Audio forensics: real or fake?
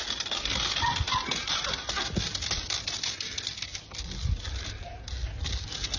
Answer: real